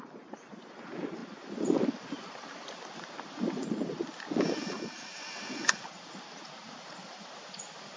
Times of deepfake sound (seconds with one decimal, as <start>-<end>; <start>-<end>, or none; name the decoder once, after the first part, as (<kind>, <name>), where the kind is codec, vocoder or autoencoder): none